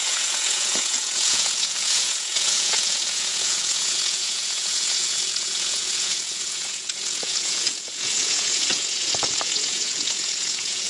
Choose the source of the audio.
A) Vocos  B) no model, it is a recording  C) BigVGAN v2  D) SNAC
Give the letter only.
A